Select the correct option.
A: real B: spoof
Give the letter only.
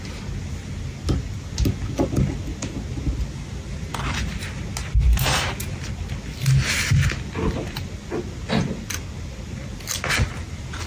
A